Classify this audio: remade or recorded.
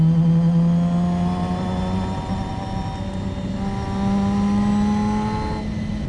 recorded